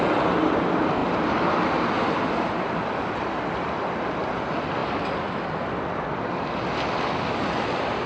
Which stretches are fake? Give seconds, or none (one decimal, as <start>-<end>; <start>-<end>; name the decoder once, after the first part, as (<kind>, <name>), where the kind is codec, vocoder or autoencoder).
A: none